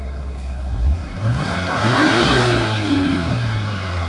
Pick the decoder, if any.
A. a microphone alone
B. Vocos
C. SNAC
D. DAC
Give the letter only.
C